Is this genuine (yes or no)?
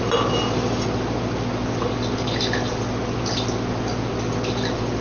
yes